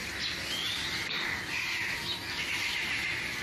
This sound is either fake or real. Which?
real